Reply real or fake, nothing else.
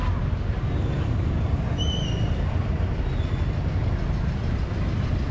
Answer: real